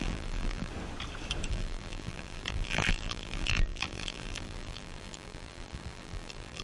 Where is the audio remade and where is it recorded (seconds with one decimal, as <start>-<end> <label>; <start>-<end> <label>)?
0.0-0.7 remade; 0.7-1.5 recorded; 1.5-6.6 remade